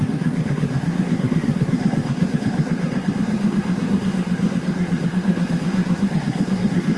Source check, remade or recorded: remade